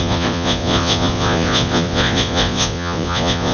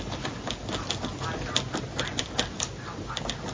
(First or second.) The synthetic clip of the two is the first